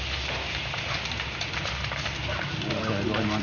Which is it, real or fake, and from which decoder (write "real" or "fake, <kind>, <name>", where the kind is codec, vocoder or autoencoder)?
real